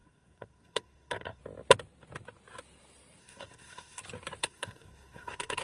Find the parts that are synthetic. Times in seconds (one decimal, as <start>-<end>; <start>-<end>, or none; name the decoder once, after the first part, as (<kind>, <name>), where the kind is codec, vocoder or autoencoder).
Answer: 0.0-1.4 (codec, SNAC); 3.2-4.0; 4.4-5.6